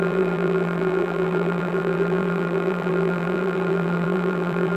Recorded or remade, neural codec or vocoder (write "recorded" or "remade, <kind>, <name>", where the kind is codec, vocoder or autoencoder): remade, vocoder, BigVGAN v2